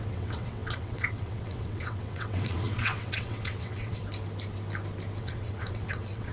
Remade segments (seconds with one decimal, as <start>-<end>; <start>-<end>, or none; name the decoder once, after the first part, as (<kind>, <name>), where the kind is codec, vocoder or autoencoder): 0.0-4.0 (vocoder, WaveNeXt); 5.2-6.3